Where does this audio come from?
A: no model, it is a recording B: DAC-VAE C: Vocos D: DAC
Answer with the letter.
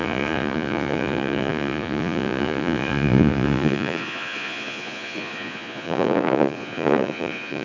C